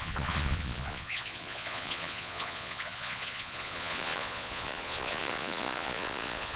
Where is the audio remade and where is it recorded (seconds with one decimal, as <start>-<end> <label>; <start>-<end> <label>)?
0.0-6.6 remade